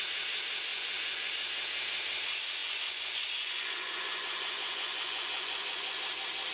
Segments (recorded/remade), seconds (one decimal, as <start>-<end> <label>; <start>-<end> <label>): 0.0-0.7 recorded; 0.7-1.3 remade; 1.3-2.6 recorded; 2.6-6.0 remade; 6.0-6.5 recorded